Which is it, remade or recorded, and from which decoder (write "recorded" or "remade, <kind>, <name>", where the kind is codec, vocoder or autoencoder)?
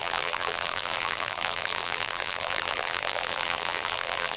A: remade, vocoder, BigVGAN v2